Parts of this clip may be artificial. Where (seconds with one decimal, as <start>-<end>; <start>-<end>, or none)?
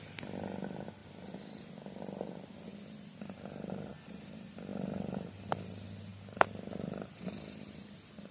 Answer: 1.0-1.7; 2.7-3.9; 4.7-5.3; 6.1-7.8